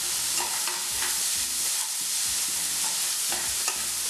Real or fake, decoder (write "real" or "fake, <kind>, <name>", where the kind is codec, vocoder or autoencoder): real